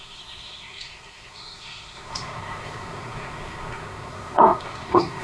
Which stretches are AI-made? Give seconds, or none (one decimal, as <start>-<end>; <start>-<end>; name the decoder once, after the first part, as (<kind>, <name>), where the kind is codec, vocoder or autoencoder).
0.0-5.2 (codec, SNAC)